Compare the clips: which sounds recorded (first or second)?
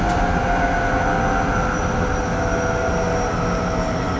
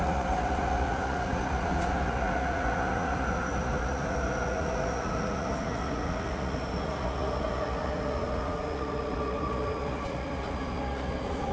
first